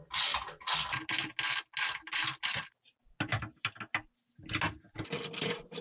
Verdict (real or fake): real